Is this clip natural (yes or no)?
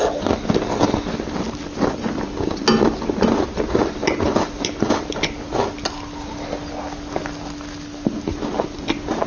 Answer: yes